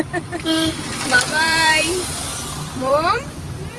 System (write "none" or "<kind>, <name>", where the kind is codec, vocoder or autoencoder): vocoder, BigVGAN v2